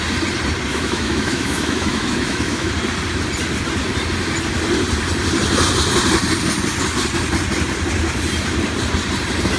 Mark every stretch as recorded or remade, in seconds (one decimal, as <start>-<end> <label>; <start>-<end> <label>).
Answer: 0.0-0.7 recorded; 0.7-2.7 remade; 2.7-9.6 recorded